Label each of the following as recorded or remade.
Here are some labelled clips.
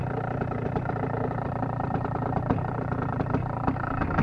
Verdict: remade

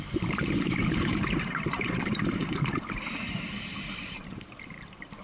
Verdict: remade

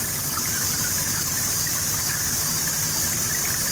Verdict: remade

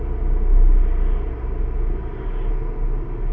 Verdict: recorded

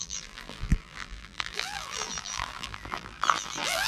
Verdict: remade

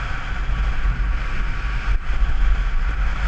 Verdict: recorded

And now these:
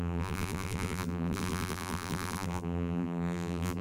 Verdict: remade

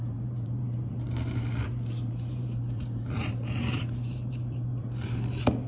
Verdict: remade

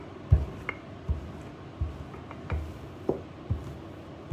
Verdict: recorded